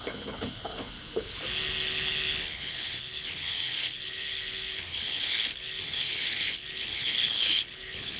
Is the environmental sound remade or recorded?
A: remade